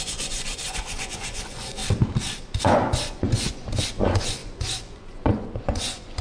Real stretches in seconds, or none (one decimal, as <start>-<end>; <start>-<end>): 1.8-2.6